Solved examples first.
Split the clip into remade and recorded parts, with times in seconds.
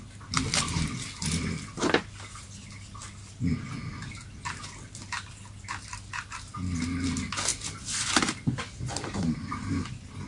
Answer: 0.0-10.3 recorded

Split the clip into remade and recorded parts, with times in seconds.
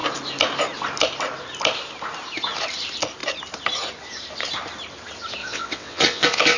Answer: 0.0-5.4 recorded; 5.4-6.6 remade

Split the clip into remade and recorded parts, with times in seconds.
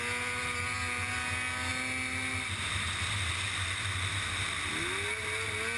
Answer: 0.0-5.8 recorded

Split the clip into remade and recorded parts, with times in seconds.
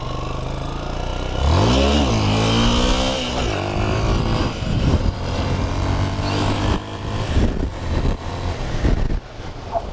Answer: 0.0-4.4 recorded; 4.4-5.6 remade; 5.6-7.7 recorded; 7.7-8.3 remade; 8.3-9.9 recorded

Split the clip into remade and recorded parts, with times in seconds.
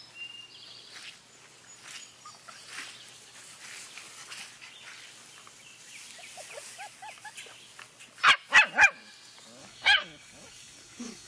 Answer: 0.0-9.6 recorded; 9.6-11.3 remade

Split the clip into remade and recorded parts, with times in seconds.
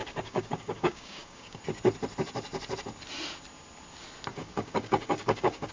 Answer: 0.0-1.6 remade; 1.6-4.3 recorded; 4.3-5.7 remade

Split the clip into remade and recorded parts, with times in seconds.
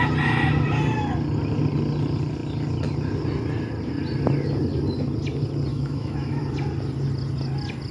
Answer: 0.0-5.7 recorded; 5.7-6.4 remade; 6.4-7.9 recorded